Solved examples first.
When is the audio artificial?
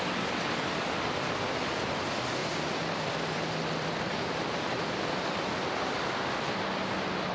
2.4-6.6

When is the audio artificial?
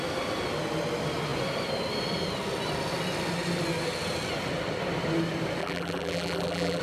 5.6-6.8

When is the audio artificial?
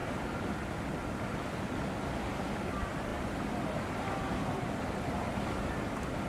none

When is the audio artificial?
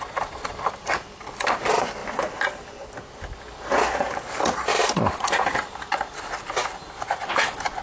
0.0-2.0; 4.8-7.8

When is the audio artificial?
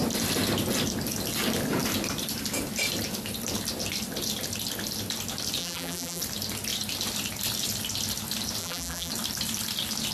5.6-6.2; 8.6-9.1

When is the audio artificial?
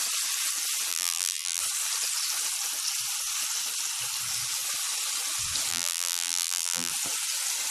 0.9-1.6; 5.7-6.9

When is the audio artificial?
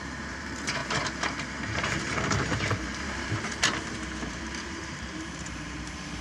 0.0-6.2